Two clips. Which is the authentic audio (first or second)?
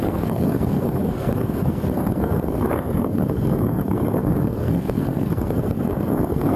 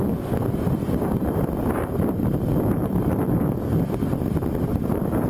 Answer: second